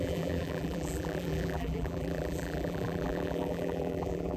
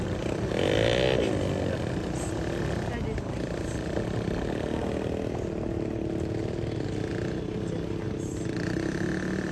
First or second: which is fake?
first